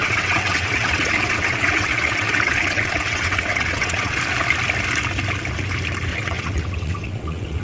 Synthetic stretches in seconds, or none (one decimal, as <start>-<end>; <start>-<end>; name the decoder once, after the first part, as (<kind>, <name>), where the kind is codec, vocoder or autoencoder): 0.0-4.2 (vocoder, WaveNeXt); 6.1-7.6